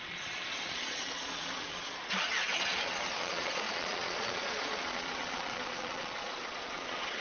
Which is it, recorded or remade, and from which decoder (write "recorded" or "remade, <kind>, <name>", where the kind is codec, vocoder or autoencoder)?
remade, vocoder, Vocos